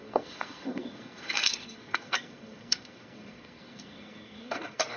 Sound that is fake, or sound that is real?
fake